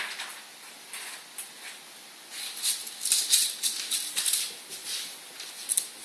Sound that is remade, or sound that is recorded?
recorded